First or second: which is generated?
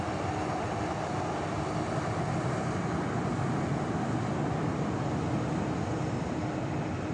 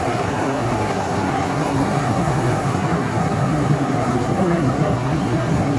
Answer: second